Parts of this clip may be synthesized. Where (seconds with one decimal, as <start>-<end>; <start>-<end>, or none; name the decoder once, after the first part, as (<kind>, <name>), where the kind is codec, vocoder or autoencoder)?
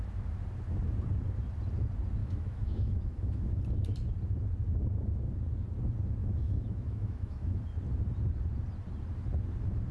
2.2-3.6 (autoencoder, DAC-VAE); 6.2-7.6